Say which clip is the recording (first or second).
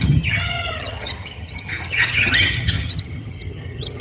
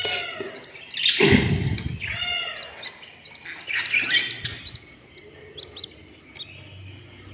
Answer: second